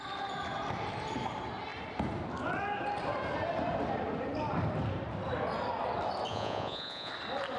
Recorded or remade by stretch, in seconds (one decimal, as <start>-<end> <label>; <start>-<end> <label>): 0.0-6.3 recorded; 6.3-7.1 remade; 7.1-7.6 recorded

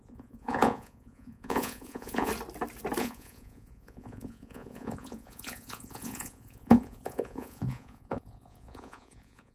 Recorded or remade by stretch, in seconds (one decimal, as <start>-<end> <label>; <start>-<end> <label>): 0.0-2.3 remade; 2.3-3.0 recorded; 3.0-9.5 remade

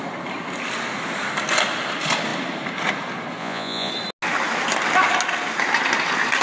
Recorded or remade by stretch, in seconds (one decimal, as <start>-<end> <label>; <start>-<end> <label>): 0.0-3.4 recorded; 3.4-3.9 remade; 3.9-6.4 recorded